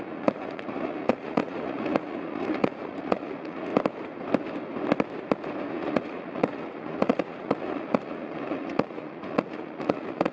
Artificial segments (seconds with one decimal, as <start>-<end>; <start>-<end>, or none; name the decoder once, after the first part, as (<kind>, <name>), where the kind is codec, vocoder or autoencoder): 0.0-3.7 (vocoder, Vocos); 5.7-10.3